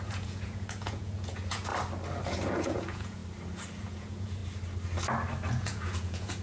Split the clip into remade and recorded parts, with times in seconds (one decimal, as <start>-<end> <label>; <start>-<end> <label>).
0.0-1.7 remade; 1.7-2.3 recorded; 2.3-3.2 remade; 3.2-3.8 recorded; 3.8-4.4 remade; 4.4-5.5 recorded; 5.5-6.4 remade